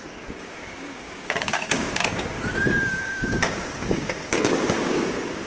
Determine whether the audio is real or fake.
fake